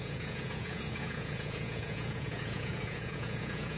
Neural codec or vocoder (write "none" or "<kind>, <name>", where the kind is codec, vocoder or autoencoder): vocoder, Vocos